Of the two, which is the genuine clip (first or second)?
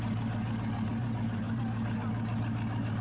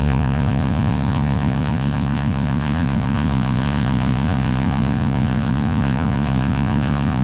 first